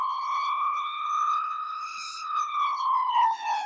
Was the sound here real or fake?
fake